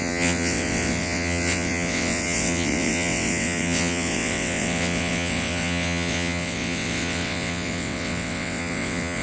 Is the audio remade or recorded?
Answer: remade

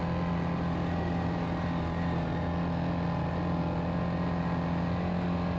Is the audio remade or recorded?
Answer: recorded